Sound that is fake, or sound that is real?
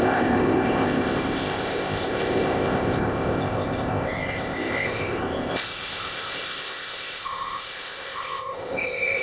fake